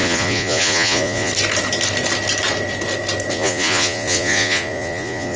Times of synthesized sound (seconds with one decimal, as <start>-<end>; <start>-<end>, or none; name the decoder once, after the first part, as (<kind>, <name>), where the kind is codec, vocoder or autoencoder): 0.0-1.3 (vocoder, Vocos); 3.3-5.4

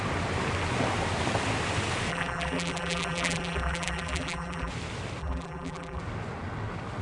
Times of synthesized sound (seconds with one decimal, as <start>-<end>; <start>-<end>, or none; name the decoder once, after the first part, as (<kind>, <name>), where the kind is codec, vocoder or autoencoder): 2.1-4.7 (vocoder, BigVGAN v2); 5.2-6.0

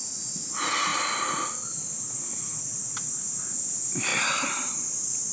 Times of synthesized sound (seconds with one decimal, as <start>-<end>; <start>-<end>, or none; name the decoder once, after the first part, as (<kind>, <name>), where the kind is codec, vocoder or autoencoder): none

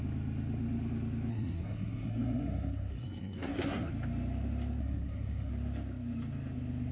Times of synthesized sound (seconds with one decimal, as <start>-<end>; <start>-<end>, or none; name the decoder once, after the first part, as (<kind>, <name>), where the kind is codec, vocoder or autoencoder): 1.3-3.9 (codec, SNAC); 4.8-5.5

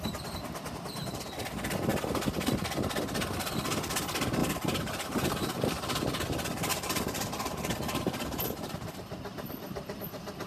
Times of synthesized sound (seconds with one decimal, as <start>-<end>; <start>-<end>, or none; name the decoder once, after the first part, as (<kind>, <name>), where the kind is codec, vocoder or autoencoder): 4.4-5.7 (vocoder, BigVGAN v2); 6.7-10.5

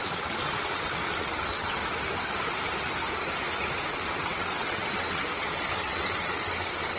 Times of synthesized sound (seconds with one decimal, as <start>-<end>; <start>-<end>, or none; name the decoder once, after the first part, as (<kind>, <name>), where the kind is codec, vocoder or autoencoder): 0.0-1.8 (vocoder, WaveNeXt); 3.9-7.0

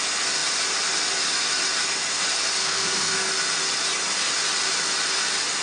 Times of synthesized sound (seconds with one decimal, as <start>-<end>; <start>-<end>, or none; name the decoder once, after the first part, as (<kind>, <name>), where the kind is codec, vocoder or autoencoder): 2.6-3.3 (codec, SNAC)